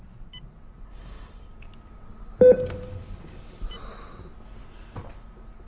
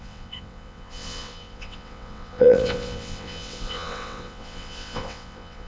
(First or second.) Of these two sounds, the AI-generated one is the second